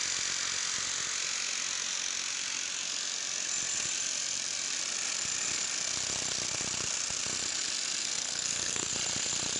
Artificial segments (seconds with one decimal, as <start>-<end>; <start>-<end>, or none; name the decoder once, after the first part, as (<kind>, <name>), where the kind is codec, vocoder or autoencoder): 8.0-8.9 (codec, SNAC)